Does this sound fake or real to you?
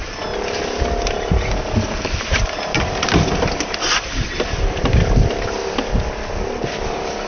real